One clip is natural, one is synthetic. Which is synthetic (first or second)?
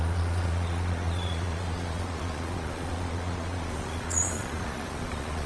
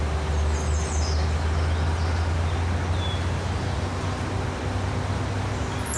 first